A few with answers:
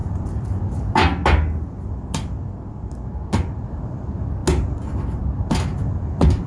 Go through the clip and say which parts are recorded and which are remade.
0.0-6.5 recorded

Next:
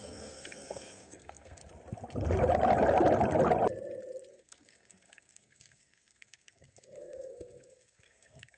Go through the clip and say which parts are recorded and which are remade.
0.0-1.6 remade; 1.6-4.3 recorded; 4.3-8.6 remade

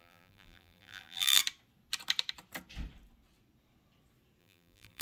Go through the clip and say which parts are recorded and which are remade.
0.0-1.4 remade; 1.4-4.4 recorded; 4.4-5.0 remade

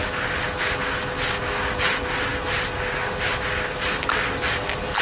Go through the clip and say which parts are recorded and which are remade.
0.0-5.0 recorded

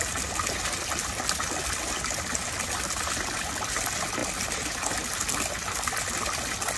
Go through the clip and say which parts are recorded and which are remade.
0.0-6.8 recorded

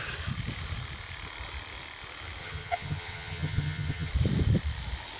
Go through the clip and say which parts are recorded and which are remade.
0.0-2.4 recorded; 2.4-4.1 remade; 4.1-5.2 recorded

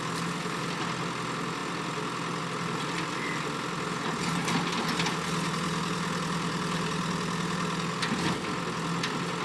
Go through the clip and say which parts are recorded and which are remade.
0.0-9.4 recorded